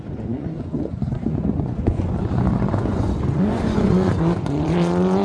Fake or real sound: fake